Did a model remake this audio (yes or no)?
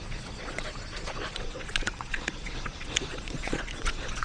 yes